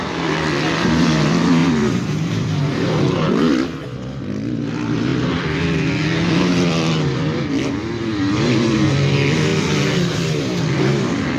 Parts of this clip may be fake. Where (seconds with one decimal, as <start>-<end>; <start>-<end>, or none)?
1.6-3.0